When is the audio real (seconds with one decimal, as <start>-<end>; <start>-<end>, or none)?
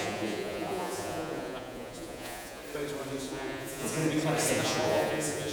2.6-3.2; 4.0-4.5